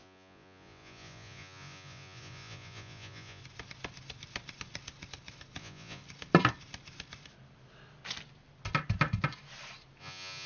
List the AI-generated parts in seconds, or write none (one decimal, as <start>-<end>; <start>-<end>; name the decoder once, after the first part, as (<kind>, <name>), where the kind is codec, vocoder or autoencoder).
0.0-3.4 (vocoder, Vocos); 5.6-6.0; 10.0-10.5